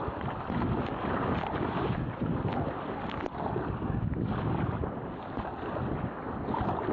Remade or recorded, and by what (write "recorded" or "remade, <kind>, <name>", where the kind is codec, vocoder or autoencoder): recorded